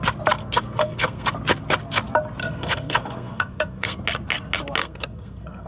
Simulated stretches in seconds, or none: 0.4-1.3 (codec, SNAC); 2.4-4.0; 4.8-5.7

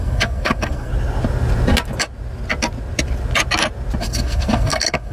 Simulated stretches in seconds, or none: 0.0-0.9 (codec, SNAC); 4.0-5.1

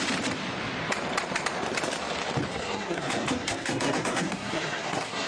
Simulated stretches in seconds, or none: 2.5-5.3 (codec, SNAC)

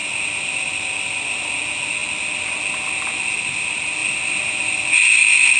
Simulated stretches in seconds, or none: 0.0-1.3 (vocoder, BigVGAN v2); 4.0-5.0

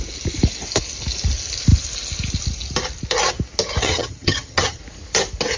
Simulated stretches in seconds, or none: 3.8-4.8 (vocoder, HiFi-GAN)

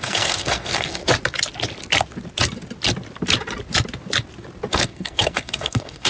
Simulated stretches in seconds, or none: 0.0-1.0 (codec, SNAC); 4.7-6.1